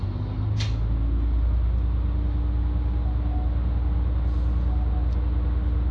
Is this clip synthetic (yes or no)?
no